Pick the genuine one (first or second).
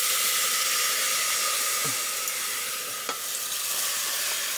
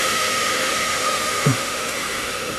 first